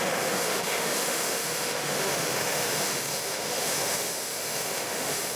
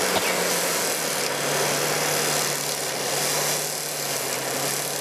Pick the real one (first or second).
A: second